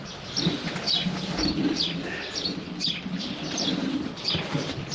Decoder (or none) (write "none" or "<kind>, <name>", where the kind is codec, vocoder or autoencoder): none